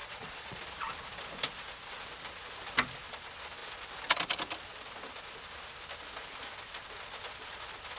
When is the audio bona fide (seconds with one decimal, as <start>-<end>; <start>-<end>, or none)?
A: 0.6-8.0